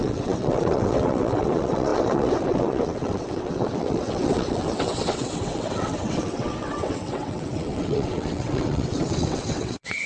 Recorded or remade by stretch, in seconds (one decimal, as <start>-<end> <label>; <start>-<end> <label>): 0.0-10.1 remade